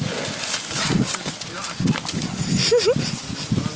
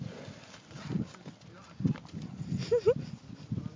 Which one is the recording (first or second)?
first